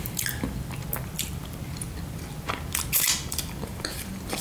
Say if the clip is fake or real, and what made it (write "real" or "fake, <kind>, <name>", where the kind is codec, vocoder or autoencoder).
fake, vocoder, BigVGAN v2